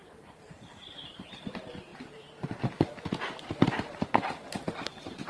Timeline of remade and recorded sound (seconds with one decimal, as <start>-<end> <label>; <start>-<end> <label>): 0.0-5.3 remade

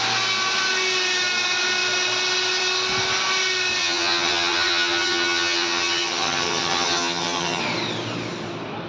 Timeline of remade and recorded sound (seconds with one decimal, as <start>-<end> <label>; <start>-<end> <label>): 0.0-3.8 recorded; 3.8-7.6 remade; 7.6-8.9 recorded

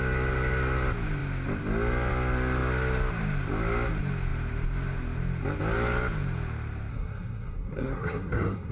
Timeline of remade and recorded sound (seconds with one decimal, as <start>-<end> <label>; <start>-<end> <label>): 0.0-6.9 recorded; 6.9-8.7 remade

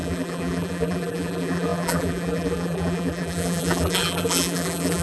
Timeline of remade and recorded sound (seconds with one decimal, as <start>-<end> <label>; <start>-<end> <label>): 0.0-5.0 remade

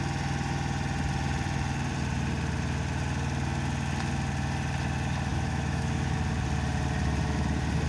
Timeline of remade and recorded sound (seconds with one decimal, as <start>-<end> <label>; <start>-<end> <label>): 0.0-5.3 recorded; 5.3-6.2 remade; 6.2-7.9 recorded

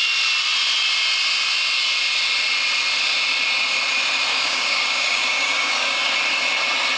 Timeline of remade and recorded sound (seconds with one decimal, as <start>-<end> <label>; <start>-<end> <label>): 0.0-4.3 recorded; 4.3-6.1 remade; 6.1-7.0 recorded

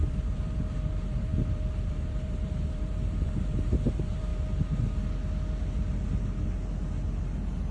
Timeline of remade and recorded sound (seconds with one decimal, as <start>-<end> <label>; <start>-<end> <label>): 0.0-4.3 remade; 4.3-7.7 recorded

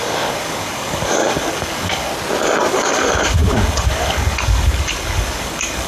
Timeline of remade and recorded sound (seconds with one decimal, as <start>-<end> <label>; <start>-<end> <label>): 0.0-2.1 remade; 2.1-2.7 recorded; 2.7-5.9 remade